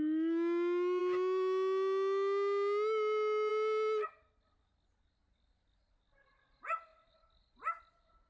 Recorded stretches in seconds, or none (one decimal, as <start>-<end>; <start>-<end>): 0.0-8.3